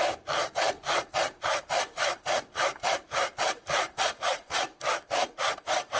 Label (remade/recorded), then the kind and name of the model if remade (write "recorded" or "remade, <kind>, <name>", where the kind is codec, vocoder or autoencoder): remade, vocoder, BigVGAN v2